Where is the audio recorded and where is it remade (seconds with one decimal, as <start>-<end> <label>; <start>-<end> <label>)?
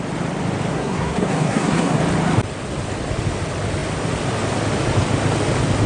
0.0-0.7 recorded; 0.7-2.0 remade; 2.0-5.9 recorded